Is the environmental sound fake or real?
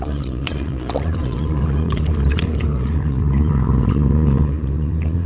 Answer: fake